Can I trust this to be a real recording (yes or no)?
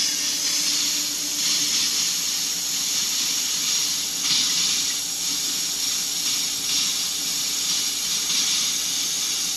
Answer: yes